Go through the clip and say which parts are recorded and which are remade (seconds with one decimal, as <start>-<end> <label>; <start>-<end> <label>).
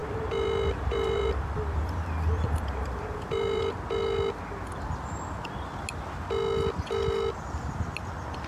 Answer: 0.0-3.6 remade; 3.6-8.5 recorded